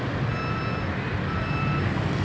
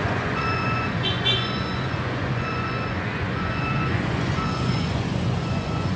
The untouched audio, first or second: first